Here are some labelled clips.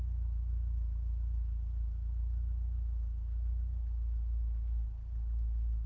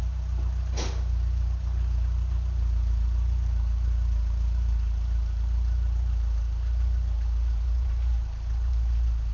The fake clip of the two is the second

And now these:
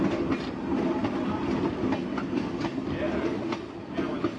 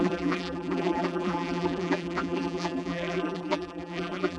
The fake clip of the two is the second